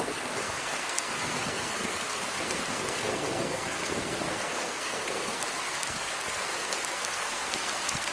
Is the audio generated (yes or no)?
yes